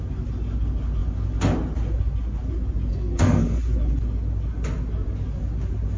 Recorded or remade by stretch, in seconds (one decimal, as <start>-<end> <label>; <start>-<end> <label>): 0.0-2.9 recorded; 2.9-3.6 remade; 3.6-6.0 recorded